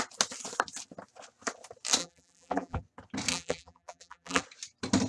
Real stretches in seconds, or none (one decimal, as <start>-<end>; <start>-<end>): 0.0-2.0; 2.8-3.3; 4.4-5.1